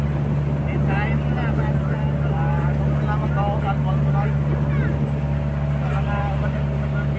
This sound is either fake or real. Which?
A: real